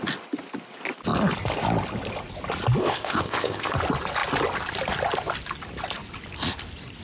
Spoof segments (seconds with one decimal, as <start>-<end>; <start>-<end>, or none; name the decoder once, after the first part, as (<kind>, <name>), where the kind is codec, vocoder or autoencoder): 2.8-3.7 (codec, ZipCodec)